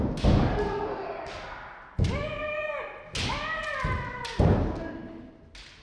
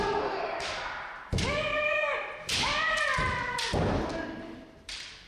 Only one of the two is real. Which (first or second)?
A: first